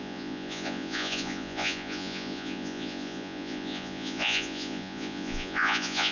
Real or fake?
fake